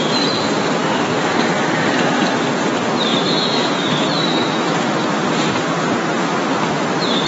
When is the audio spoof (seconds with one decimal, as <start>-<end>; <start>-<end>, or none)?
3.1-6.4